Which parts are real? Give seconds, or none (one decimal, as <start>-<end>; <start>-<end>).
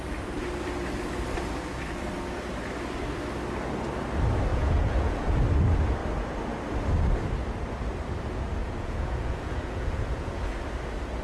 0.0-4.5; 5.4-8.6; 10.4-11.2